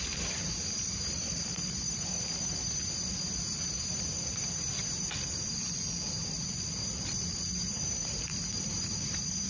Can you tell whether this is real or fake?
fake